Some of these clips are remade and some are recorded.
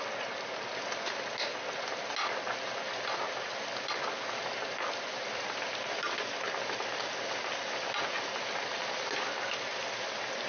recorded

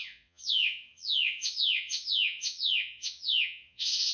remade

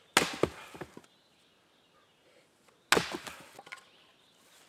recorded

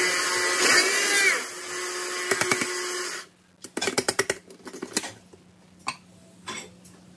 recorded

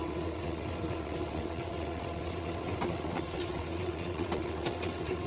remade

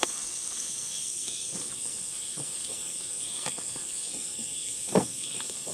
remade